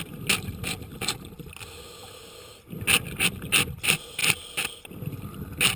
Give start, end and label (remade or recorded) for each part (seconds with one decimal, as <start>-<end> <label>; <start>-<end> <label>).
0.0-5.8 recorded